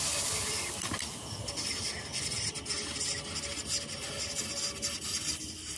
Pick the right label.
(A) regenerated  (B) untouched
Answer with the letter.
B